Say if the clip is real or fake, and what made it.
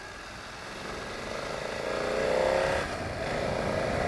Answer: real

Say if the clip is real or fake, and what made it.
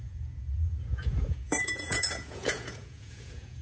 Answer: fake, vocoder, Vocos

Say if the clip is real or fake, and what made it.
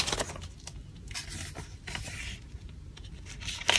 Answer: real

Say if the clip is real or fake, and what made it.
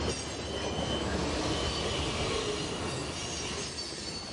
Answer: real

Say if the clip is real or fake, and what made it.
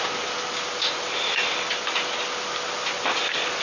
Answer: real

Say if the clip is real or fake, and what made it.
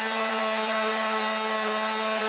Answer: fake, vocoder, Vocos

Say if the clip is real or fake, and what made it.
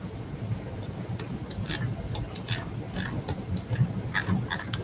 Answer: real